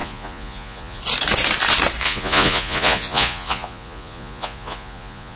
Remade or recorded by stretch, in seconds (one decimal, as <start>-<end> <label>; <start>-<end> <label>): 0.0-1.0 remade; 1.0-2.0 recorded; 2.0-5.4 remade